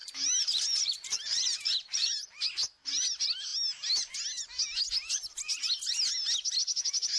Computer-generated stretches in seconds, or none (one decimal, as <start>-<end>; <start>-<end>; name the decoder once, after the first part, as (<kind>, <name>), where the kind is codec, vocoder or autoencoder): 0.0-2.4 (vocoder, BigVGAN v2)